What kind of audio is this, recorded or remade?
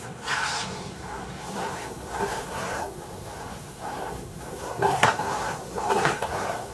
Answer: remade